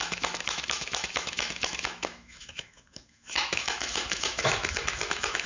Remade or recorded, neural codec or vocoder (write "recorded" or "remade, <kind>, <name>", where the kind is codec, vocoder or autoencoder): remade, autoencoder, DAC-VAE